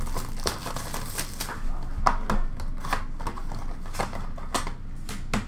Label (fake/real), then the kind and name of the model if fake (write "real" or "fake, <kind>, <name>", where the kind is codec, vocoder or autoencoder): real